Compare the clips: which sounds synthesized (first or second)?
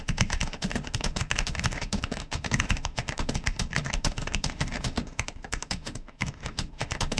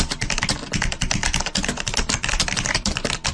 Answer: first